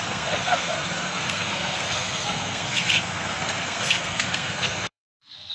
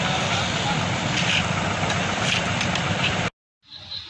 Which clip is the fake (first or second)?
first